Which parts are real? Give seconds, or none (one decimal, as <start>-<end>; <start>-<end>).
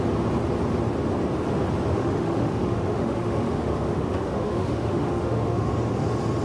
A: 0.0-1.9; 5.7-6.4